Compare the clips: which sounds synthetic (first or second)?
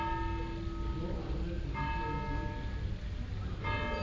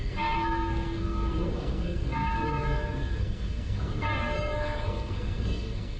second